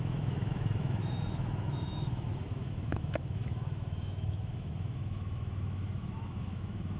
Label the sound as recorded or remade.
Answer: remade